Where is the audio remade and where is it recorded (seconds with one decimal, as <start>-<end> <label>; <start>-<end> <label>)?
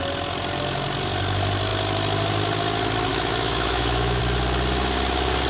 0.0-3.1 recorded; 3.1-4.2 remade; 4.2-5.5 recorded